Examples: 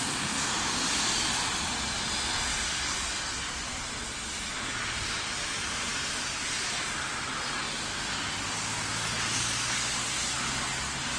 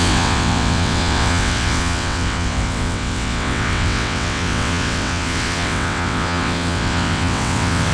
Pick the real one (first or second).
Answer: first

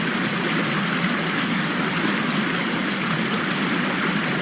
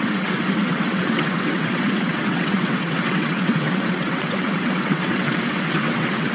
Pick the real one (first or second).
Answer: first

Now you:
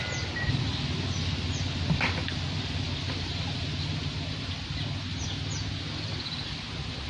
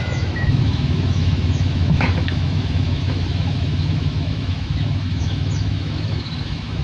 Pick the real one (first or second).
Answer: first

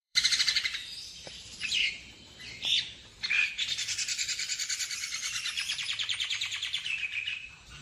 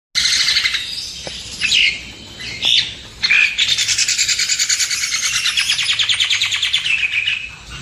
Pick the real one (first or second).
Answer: second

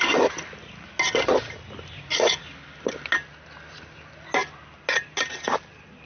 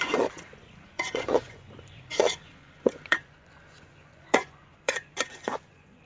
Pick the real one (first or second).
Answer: first